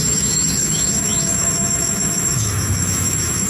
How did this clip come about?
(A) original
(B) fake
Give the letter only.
B